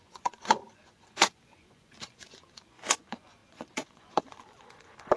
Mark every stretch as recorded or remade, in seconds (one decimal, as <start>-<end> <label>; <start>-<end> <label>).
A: 0.0-5.2 remade